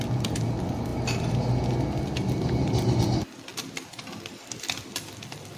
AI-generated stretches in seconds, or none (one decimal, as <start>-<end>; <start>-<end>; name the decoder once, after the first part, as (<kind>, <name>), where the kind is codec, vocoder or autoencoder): 3.5-4.1 (vocoder, BigVGAN v2)